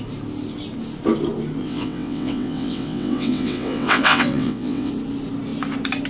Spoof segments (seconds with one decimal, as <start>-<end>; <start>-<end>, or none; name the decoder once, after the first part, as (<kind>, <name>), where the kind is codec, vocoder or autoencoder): 1.6-4.9 (vocoder, WaveNeXt)